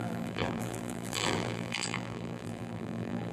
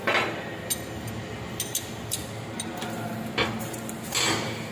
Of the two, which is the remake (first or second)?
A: first